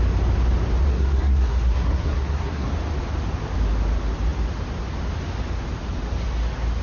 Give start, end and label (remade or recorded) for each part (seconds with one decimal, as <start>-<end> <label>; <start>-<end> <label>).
0.0-0.9 recorded; 0.9-2.7 remade; 2.7-6.8 recorded